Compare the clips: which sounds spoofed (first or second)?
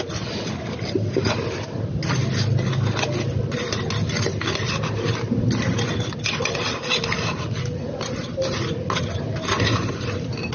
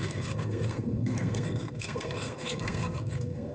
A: second